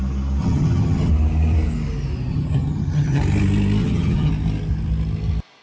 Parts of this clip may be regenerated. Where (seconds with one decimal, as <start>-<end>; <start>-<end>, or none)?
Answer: 0.4-1.1; 2.3-3.2; 3.8-4.3